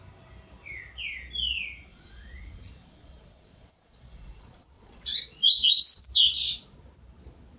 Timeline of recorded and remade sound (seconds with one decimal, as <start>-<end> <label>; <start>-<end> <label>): 0.0-1.9 recorded; 1.9-6.0 remade; 6.0-7.6 recorded